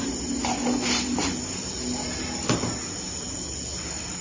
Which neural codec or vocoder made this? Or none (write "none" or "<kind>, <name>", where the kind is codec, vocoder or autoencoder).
none